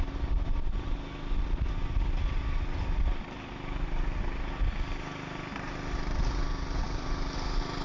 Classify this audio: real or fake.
real